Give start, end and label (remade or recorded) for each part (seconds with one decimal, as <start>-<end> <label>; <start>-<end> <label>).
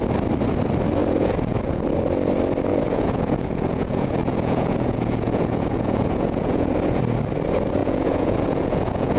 0.0-1.0 recorded; 1.0-1.8 remade; 1.8-2.7 recorded; 2.7-7.0 remade; 7.0-7.8 recorded; 7.8-9.2 remade